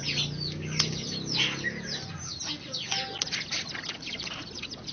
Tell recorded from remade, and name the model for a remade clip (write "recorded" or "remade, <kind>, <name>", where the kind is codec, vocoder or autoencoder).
recorded